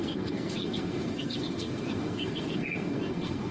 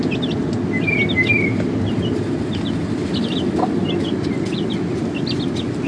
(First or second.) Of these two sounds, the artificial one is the first